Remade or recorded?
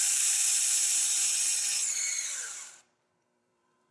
remade